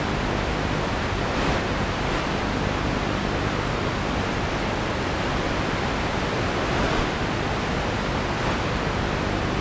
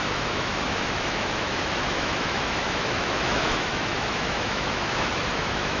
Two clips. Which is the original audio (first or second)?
first